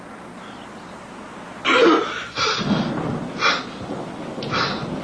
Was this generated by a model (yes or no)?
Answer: no